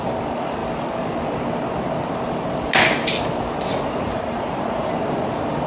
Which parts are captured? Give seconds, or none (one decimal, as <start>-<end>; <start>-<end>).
0.0-3.7; 4.9-5.7